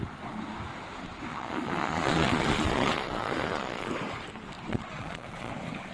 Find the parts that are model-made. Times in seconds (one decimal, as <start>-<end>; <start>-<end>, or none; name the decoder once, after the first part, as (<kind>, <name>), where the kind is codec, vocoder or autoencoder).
1.3-3.9 (vocoder, Vocos); 4.7-5.5